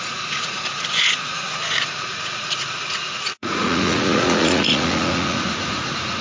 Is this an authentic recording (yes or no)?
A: no